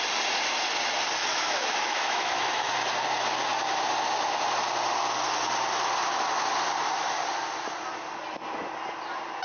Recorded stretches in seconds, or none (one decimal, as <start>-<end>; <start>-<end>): 0.0-1.2; 2.7-9.4

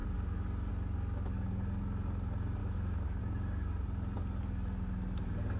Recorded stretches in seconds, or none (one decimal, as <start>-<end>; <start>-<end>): 0.0-2.6; 3.2-5.6

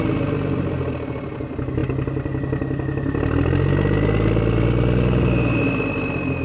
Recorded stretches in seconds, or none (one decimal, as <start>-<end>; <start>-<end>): 0.0-6.4

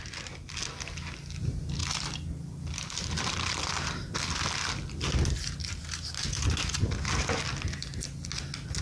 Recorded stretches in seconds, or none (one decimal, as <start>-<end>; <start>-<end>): 0.0-1.8; 3.7-8.8

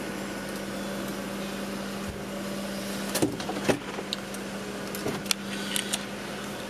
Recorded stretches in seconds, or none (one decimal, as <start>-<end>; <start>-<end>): 0.0-6.7

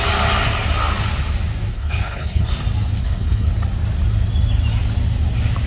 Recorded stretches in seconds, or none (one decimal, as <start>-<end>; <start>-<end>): 0.0-1.7; 2.5-3.0; 3.5-5.7

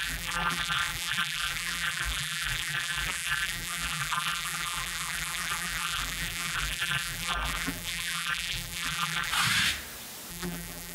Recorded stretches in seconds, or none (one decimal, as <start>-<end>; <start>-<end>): 9.3-10.3